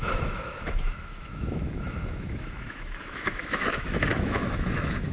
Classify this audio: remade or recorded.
remade